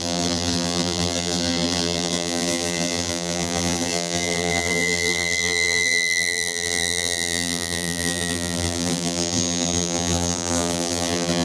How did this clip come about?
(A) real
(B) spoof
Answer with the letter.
B